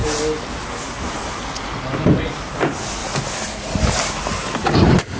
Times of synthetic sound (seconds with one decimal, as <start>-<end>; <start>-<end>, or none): none